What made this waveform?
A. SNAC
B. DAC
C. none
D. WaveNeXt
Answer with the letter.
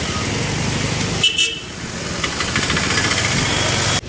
C